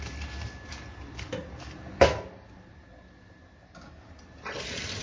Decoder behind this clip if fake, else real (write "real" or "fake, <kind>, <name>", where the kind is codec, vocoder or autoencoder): real